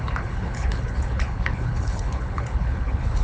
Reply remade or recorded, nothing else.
remade